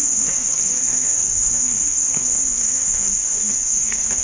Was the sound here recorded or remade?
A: remade